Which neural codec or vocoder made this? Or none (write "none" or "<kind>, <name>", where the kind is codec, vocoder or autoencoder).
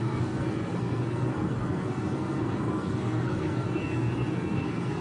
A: codec, SNAC